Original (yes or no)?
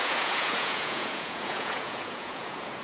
no